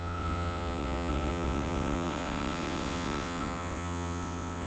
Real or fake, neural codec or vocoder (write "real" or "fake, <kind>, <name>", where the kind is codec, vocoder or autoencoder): fake, vocoder, WaveNeXt